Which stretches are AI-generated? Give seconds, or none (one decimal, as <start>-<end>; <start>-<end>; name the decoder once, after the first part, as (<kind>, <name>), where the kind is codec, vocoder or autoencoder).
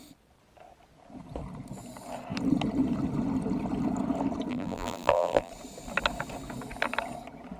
4.5-5.5 (vocoder, BigVGAN v2)